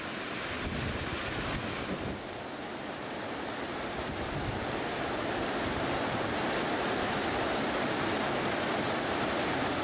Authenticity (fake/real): real